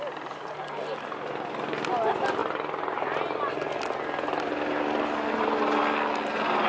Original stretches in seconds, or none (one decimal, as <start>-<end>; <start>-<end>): 0.0-6.7